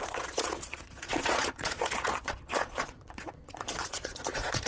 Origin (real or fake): fake